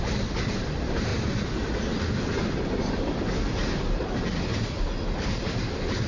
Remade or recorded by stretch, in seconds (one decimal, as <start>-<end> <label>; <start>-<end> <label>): 0.0-6.1 recorded